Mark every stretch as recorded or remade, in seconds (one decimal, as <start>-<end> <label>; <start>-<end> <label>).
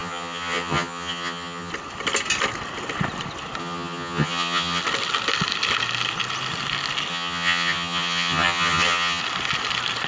0.0-1.7 remade; 1.7-3.6 recorded; 3.6-4.8 remade; 4.8-7.1 recorded; 7.1-9.2 remade; 9.2-10.1 recorded